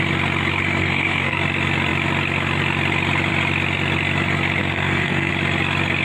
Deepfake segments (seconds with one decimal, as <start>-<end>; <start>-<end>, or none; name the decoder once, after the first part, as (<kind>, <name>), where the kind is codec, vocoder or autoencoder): 0.8-1.4 (codec, SNAC); 4.6-5.3